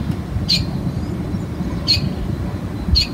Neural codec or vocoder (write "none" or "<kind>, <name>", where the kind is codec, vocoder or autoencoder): none